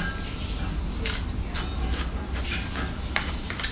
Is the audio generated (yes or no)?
no